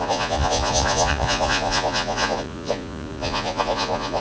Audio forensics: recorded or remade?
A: remade